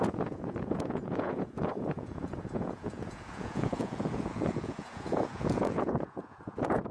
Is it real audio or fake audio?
fake